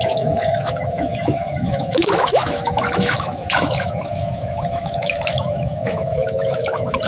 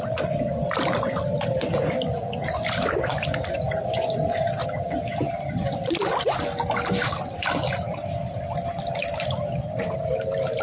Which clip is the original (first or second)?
second